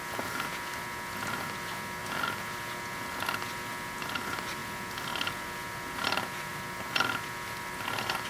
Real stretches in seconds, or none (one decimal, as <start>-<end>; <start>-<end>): 0.0-8.3